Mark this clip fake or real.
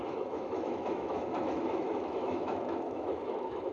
fake